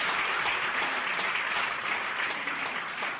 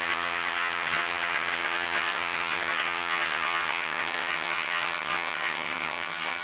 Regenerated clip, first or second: second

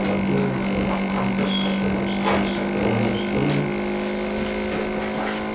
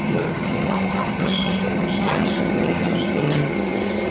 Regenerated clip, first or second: second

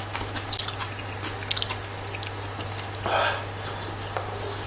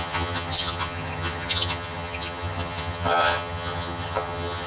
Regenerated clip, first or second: second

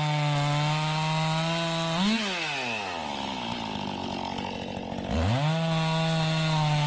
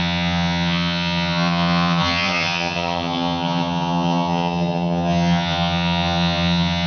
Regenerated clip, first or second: second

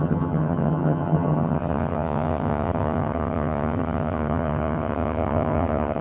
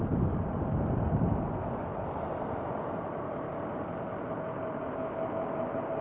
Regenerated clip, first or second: first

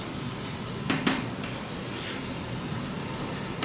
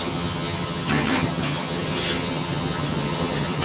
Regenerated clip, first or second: second